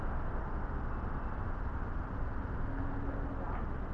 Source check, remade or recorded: recorded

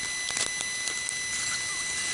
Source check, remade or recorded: recorded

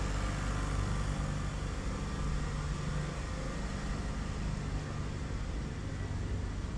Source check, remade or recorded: recorded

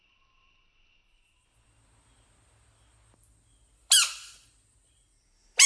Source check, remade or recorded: recorded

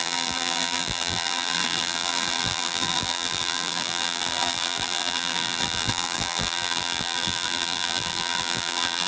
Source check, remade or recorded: remade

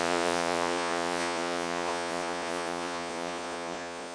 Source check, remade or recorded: remade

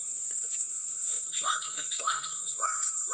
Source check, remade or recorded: remade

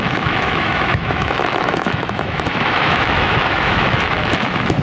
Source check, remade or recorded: remade